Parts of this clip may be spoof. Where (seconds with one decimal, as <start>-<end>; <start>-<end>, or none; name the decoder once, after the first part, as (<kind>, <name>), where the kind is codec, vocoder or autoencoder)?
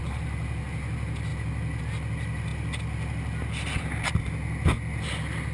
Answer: none